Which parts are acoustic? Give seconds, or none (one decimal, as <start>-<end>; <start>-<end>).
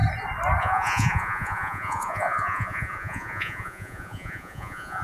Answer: 0.0-0.6